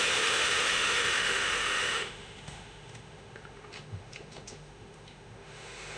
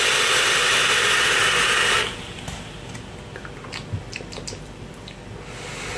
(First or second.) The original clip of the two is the second